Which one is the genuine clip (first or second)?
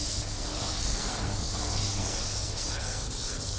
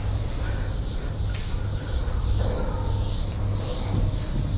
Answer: second